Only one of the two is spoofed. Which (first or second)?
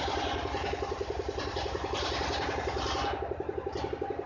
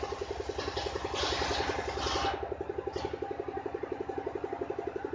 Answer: first